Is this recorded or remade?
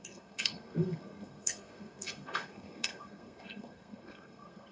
remade